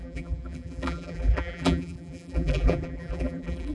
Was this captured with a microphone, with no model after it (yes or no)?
no